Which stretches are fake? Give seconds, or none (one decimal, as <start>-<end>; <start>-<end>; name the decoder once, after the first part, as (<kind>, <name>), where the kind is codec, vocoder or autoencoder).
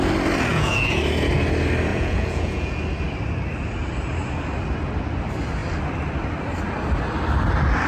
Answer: 0.5-1.0 (vocoder, Vocos); 1.9-2.8